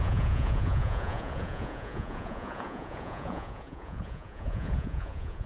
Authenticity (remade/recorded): remade